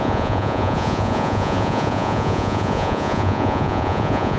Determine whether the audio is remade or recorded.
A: remade